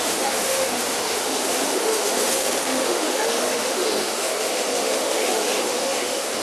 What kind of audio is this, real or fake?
fake